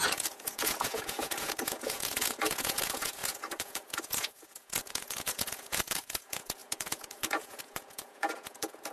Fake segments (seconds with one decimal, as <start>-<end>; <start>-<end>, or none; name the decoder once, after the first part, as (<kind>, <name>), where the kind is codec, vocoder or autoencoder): 0.0-8.9 (vocoder, Vocos)